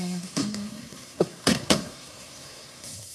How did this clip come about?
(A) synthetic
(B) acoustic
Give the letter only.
A